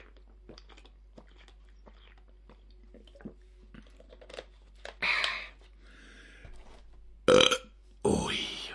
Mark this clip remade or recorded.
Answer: recorded